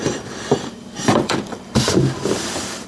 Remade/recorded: remade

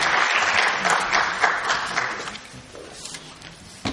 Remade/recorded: remade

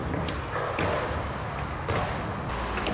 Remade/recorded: recorded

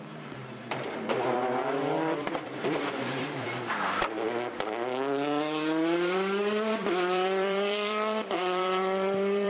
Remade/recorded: remade